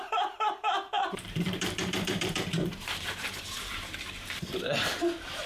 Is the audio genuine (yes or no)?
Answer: no